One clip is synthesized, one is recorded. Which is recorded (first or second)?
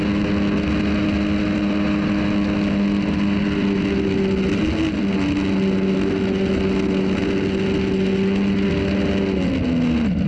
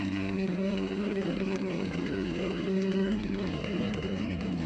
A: first